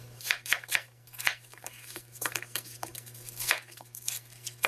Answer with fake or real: fake